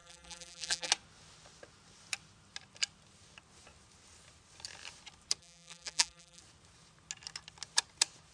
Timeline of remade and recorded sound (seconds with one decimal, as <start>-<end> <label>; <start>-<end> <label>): 0.0-0.9 remade; 0.9-5.4 recorded; 5.4-6.4 remade; 6.4-8.3 recorded